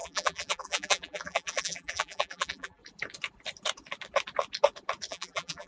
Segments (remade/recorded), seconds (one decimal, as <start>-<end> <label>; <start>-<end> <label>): 0.0-2.8 remade; 2.8-5.1 recorded; 5.1-5.7 remade